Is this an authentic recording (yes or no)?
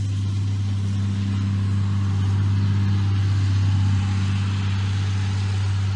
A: yes